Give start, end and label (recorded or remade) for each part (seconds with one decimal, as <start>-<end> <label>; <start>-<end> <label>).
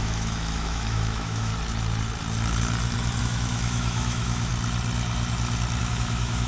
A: 0.0-1.5 remade; 1.5-3.2 recorded; 3.2-4.5 remade; 4.5-5.8 recorded; 5.8-6.5 remade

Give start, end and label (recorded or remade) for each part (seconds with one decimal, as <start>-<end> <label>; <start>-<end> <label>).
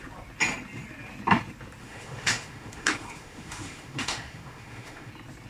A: 0.0-1.8 recorded; 1.8-5.1 remade; 5.1-5.5 recorded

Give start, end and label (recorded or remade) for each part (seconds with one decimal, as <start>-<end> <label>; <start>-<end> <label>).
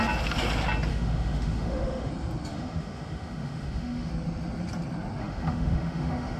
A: 0.0-0.9 recorded; 0.9-2.1 remade; 2.1-2.5 recorded; 2.5-4.1 remade; 4.1-5.2 recorded; 5.2-6.4 remade